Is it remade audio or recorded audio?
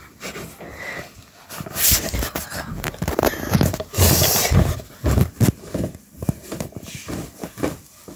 remade